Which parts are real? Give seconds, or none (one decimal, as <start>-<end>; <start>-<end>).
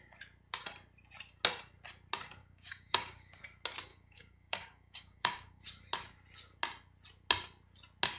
0.0-2.4; 3.4-3.9; 5.6-8.2